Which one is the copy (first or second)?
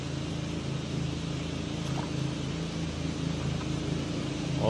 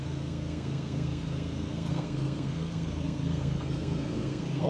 second